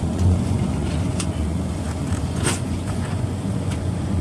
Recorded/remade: remade